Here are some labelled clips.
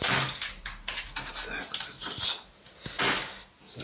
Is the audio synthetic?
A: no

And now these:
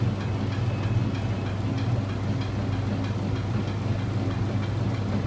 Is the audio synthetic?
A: no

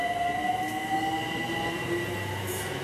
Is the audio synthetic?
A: no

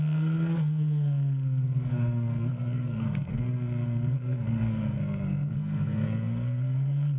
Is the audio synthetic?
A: yes